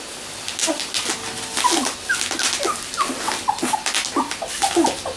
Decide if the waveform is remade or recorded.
recorded